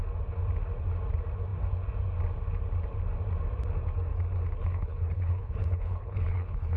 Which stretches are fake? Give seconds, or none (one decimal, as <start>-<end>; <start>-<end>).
4.6-6.8